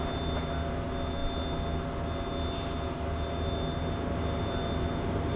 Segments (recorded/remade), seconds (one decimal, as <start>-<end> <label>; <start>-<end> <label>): 0.0-5.4 recorded